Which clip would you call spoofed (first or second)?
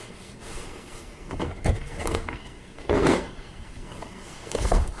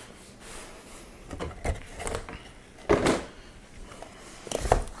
first